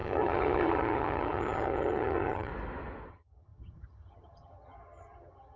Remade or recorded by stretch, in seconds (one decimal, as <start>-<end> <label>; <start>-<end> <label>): 0.0-2.5 remade; 2.5-3.1 recorded; 3.1-5.6 remade